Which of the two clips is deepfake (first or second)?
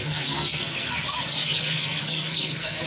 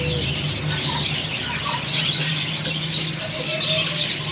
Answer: first